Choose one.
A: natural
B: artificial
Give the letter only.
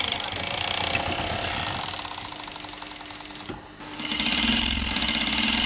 A